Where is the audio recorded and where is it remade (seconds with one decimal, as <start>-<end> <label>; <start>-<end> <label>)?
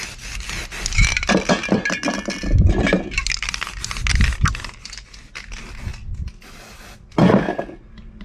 0.0-8.2 recorded